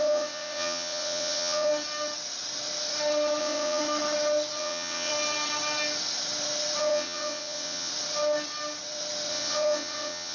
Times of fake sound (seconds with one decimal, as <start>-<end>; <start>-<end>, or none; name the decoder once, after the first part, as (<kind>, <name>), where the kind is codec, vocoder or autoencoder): 0.0-1.7 (vocoder, WaveNeXt); 3.4-3.8; 4.6-5.1; 6.8-7.9; 9.3-10.3

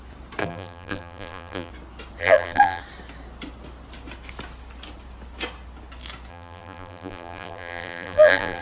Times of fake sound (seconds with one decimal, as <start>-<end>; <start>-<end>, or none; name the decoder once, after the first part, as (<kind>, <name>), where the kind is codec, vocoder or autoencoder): 0.4-1.7 (vocoder, BigVGAN v2); 2.2-2.8; 6.3-8.6

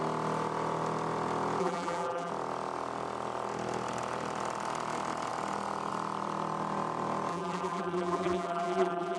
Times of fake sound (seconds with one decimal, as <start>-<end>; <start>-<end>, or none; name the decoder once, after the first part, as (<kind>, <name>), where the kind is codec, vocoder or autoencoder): 1.6-2.3 (vocoder, BigVGAN v2); 7.3-9.2

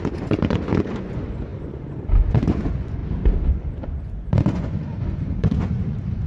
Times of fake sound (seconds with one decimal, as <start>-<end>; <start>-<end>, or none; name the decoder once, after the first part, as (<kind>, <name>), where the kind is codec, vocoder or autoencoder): 0.0-3.0 (vocoder, Vocos); 3.5-6.3